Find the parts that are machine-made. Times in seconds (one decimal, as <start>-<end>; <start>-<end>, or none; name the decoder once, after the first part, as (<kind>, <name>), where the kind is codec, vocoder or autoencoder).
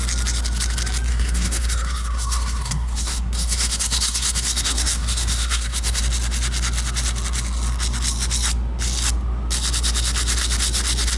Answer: 1.1-6.0 (codec, SNAC)